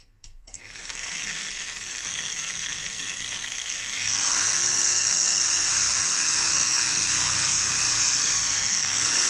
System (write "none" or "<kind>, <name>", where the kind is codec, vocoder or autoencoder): codec, SNAC